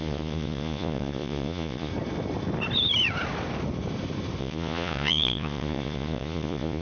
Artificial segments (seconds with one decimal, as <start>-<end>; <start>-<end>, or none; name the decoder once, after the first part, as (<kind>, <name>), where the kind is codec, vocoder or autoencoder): 0.0-1.9 (vocoder, Vocos); 4.4-6.8